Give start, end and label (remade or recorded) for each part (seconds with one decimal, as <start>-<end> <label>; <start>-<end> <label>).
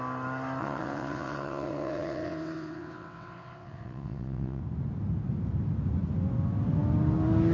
0.0-0.6 recorded; 0.6-4.6 remade; 4.6-7.5 recorded